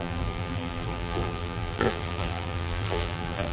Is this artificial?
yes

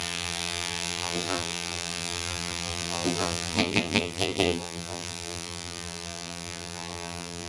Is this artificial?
yes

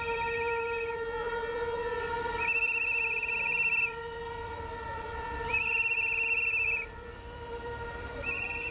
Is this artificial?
yes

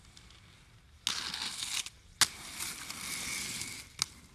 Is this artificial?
no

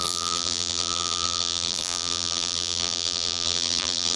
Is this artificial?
yes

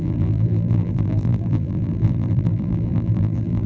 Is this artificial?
yes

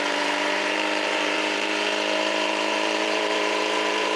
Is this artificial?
yes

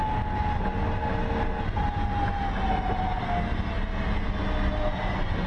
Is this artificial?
no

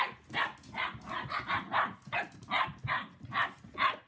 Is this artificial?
no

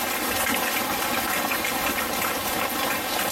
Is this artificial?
no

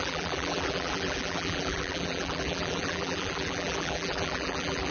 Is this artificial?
yes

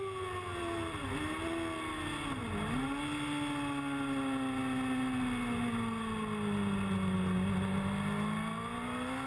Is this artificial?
no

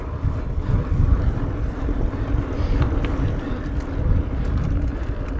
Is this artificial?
no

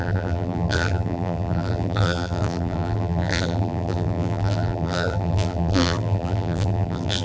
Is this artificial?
yes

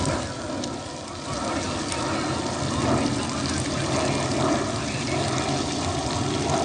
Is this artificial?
no